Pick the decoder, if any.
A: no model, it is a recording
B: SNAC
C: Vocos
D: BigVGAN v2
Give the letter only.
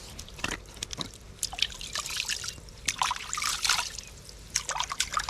A